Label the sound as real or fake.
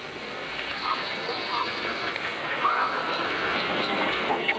fake